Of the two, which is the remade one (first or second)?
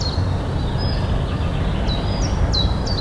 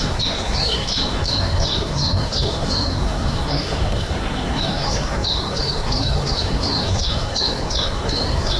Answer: second